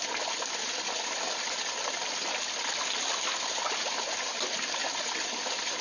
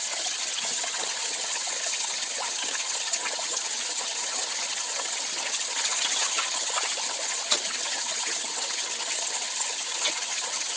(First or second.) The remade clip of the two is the second